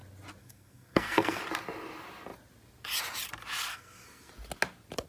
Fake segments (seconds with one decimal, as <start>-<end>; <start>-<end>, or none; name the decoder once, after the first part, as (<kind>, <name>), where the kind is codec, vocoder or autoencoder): 0.4-1.4 (codec, SNAC); 3.7-4.3